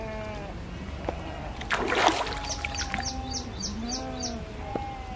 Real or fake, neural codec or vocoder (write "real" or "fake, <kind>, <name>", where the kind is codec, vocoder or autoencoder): real